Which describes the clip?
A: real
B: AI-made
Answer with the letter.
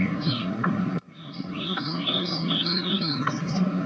B